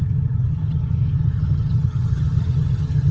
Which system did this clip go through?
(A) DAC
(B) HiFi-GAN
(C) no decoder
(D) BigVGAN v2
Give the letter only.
B